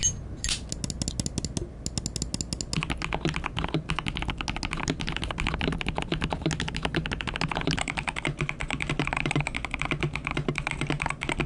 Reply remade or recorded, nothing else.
recorded